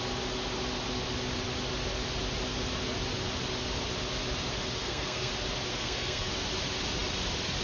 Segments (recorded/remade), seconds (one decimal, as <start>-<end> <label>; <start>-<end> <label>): 0.0-4.8 recorded; 4.8-5.3 remade; 5.3-5.7 recorded; 5.7-6.3 remade; 6.3-7.6 recorded